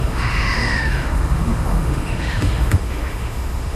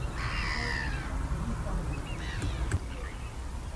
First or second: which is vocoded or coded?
first